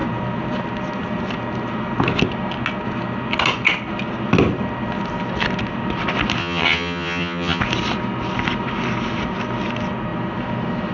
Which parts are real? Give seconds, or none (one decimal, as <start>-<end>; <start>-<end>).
0.0-6.4; 7.6-10.9